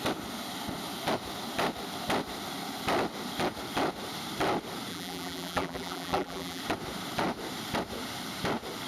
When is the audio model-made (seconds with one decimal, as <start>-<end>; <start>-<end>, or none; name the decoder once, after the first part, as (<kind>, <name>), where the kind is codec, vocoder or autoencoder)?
4.9-6.6 (vocoder, BigVGAN v2)